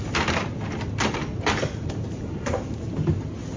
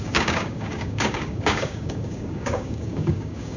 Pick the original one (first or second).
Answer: first